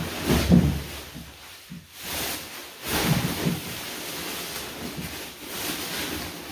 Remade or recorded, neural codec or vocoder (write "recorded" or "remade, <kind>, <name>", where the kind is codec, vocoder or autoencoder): recorded